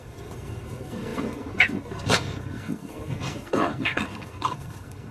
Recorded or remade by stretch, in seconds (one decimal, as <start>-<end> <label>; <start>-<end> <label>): 0.0-5.1 remade